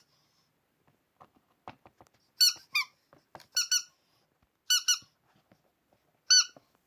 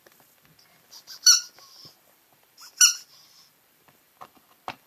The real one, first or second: first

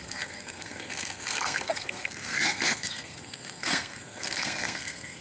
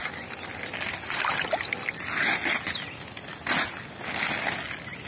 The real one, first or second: second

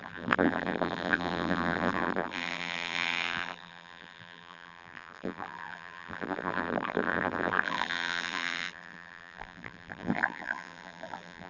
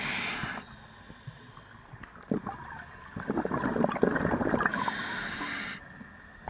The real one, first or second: second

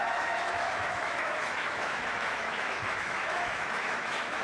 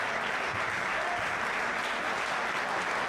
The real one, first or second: second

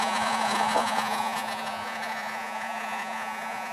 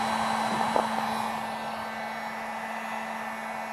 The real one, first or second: second